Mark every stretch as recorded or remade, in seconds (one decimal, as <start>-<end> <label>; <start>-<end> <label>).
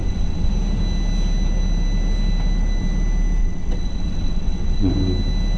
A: 0.0-0.5 remade; 0.5-3.4 recorded; 3.4-4.9 remade; 4.9-5.6 recorded